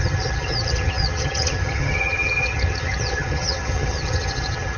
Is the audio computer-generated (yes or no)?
yes